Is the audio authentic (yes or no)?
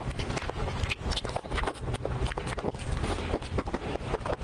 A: yes